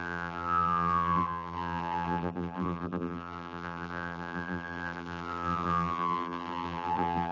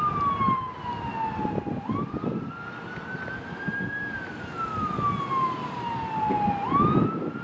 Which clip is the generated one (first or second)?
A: first